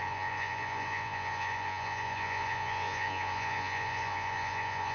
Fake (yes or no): yes